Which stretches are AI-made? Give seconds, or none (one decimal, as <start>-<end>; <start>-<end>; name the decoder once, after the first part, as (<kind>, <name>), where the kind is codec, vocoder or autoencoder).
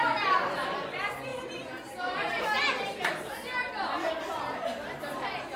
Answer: none